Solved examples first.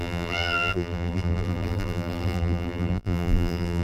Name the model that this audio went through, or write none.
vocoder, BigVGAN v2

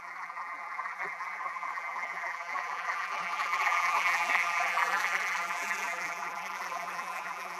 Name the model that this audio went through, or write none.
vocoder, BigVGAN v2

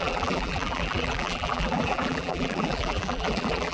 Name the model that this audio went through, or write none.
vocoder, BigVGAN v2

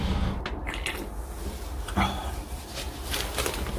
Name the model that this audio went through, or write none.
none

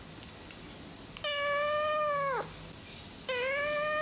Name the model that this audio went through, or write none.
none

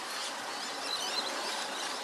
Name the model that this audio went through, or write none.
vocoder, BigVGAN v2